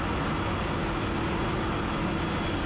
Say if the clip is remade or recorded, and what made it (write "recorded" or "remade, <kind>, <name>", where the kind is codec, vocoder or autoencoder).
recorded